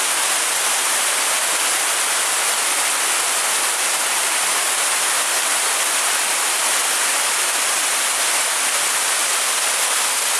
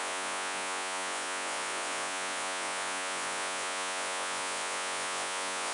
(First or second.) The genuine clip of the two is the first